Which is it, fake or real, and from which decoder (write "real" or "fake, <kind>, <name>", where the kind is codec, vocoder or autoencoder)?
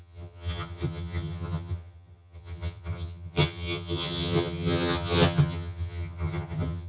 fake, vocoder, HiFi-GAN